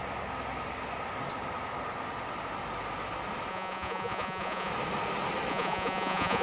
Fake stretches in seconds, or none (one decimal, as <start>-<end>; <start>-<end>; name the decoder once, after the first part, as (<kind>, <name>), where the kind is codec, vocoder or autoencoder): 3.5-4.7 (vocoder, Vocos); 5.5-6.4